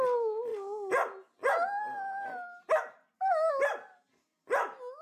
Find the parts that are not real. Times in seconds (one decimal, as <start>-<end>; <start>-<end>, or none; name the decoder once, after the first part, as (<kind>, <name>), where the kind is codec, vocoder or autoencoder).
none